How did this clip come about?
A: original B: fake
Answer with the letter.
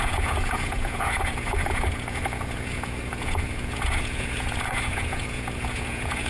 B